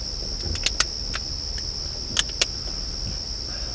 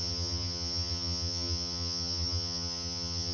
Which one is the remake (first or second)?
second